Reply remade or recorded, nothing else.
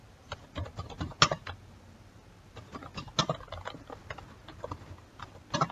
recorded